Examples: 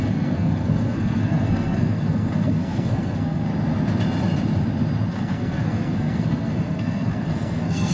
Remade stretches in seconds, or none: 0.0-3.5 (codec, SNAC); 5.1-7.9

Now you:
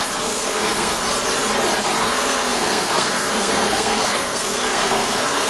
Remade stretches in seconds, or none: 0.0-1.0 (codec, SNAC); 2.0-5.5

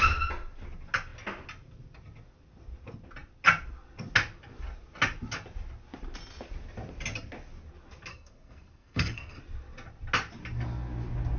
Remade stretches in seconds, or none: 8.1-9.4 (codec, SNAC)

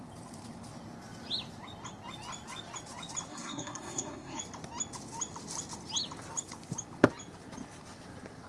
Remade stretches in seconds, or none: 3.3-4.4 (codec, SNAC)

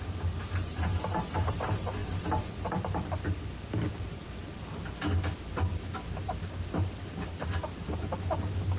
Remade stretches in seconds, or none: none